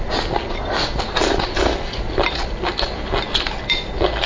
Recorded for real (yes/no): yes